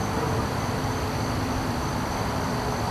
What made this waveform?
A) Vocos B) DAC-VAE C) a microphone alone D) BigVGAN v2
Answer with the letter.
C